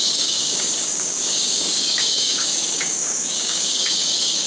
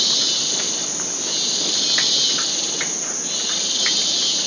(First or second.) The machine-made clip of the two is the first